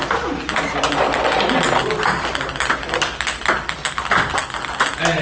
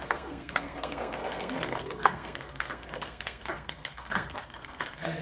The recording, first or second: first